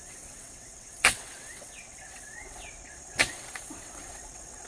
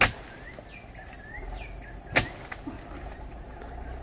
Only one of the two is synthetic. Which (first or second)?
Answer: first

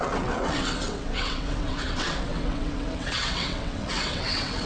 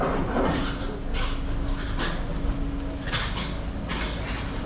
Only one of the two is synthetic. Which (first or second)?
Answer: first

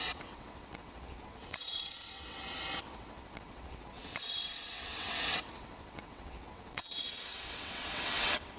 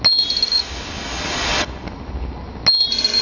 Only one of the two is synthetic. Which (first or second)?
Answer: first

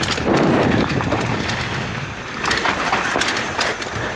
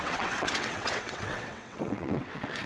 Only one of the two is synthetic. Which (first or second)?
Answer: second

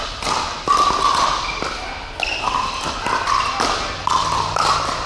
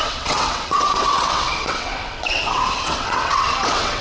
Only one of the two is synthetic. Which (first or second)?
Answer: second